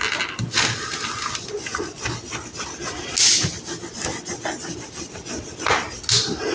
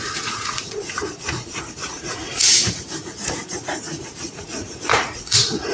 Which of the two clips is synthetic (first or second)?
second